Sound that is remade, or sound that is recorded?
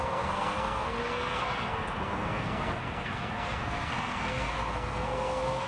remade